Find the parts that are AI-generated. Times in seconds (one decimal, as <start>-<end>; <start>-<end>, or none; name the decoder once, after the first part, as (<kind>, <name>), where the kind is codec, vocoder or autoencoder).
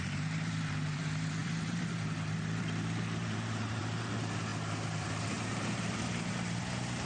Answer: 0.0-7.1 (vocoder, BigVGAN v2)